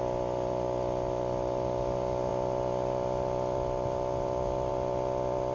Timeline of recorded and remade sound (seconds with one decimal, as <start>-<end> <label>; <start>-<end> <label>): 0.0-5.5 recorded